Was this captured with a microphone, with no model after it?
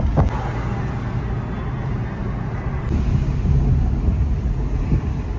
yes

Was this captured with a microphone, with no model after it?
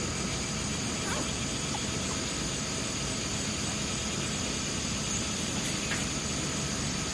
yes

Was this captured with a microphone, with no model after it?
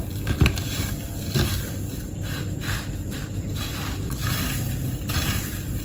yes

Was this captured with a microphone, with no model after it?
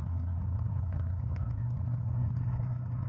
no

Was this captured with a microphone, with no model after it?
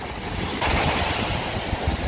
yes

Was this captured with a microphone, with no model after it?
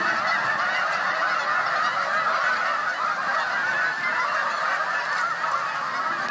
yes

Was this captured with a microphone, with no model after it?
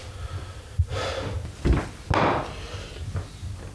yes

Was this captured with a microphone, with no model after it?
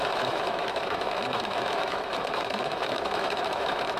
no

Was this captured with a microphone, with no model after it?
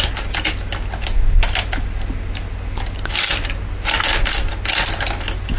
yes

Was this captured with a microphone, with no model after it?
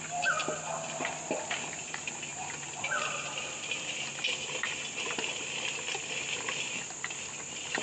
yes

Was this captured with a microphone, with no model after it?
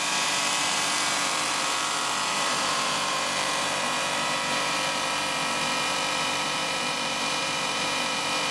no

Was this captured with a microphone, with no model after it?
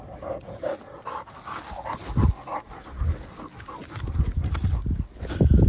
yes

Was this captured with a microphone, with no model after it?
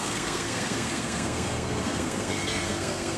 no